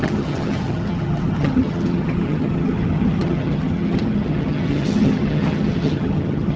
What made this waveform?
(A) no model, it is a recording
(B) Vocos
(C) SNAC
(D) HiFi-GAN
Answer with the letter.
D